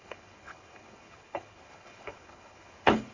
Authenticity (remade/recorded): remade